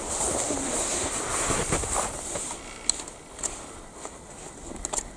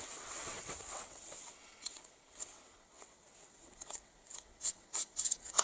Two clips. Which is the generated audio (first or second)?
second